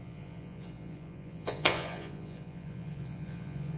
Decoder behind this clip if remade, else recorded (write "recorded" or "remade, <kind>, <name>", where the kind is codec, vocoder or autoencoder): remade, vocoder, Vocos